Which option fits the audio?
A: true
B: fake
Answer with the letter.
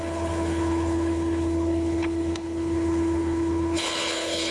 B